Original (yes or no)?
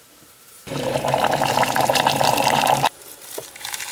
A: no